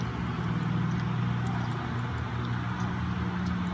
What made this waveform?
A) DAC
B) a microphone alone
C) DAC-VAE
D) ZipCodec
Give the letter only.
B